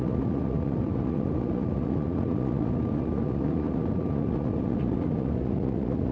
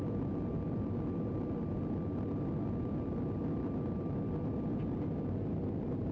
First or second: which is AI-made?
first